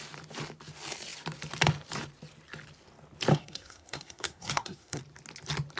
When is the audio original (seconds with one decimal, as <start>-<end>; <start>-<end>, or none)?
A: 0.0-3.3; 5.0-5.8

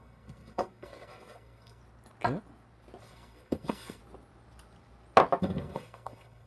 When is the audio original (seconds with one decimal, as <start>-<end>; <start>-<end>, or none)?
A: 1.8-3.0; 4.0-5.4

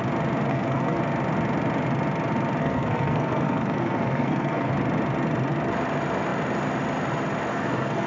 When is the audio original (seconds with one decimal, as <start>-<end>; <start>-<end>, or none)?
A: 0.0-0.5; 1.0-2.6; 4.7-7.5

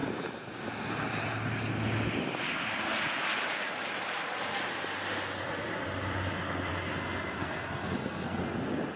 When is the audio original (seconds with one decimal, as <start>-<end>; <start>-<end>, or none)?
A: 0.0-7.4; 8.4-9.0

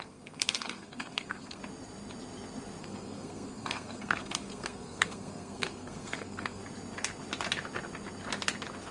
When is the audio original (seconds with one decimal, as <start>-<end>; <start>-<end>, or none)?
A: 1.6-2.8; 6.6-8.9